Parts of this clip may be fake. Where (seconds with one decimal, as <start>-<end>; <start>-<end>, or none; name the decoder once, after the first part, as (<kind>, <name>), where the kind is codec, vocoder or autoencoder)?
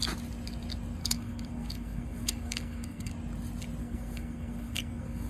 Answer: 1.0-3.1 (codec, SNAC); 3.8-5.3